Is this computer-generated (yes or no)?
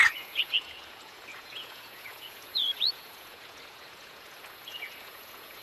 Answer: yes